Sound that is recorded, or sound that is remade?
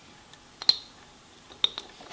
recorded